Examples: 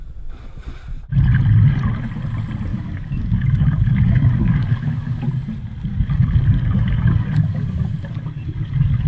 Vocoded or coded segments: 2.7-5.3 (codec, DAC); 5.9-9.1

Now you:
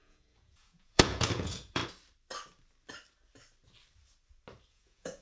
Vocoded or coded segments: 0.0-1.8 (vocoder, Vocos); 4.7-5.2

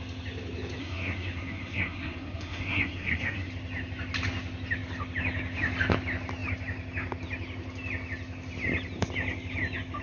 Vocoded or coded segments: 0.8-3.5 (codec, SNAC)

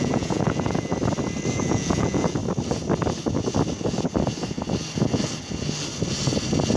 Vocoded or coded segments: 0.0-0.9 (vocoder, Vocos); 1.5-2.4

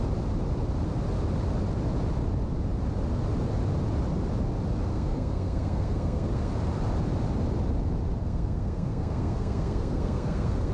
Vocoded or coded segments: 4.9-6.5 (codec, SNAC); 8.2-10.7